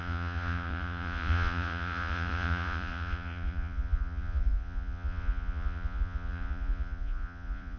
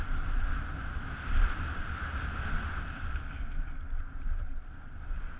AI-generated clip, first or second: first